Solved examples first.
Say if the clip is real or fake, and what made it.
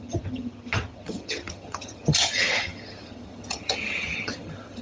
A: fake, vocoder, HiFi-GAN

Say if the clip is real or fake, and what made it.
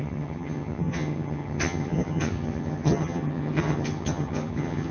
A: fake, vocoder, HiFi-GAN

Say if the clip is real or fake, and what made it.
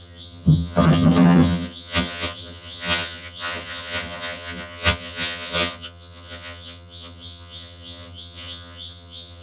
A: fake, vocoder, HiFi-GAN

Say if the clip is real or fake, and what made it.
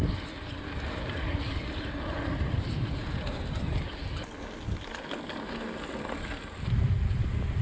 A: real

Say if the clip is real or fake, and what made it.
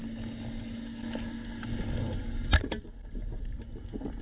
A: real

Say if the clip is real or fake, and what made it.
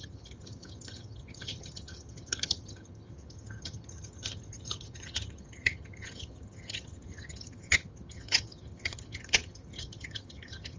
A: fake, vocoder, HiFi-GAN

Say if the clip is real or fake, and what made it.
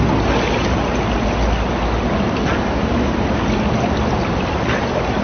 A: real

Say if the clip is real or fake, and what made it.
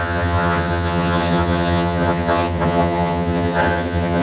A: fake, vocoder, HiFi-GAN